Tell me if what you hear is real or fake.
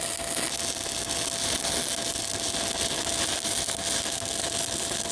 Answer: real